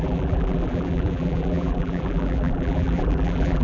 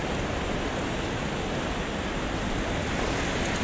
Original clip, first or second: second